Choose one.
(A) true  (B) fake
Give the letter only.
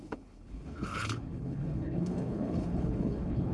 B